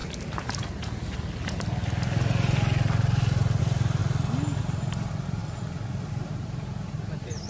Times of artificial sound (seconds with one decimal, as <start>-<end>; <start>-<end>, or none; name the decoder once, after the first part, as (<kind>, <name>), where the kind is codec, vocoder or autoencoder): 3.6-4.0 (vocoder, BigVGAN v2); 4.6-5.4; 6.1-7.5